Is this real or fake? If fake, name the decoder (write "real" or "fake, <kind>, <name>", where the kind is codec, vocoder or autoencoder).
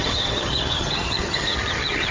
fake, vocoder, HiFi-GAN